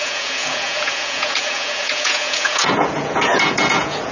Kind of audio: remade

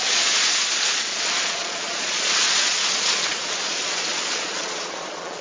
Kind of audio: remade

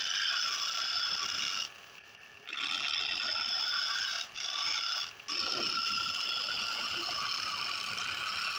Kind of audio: recorded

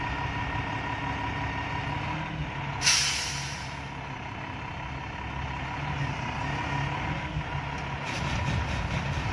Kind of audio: recorded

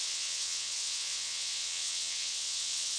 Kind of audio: remade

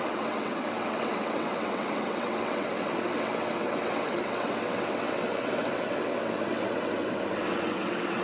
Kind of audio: remade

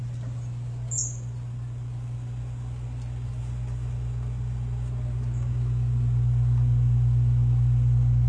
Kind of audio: recorded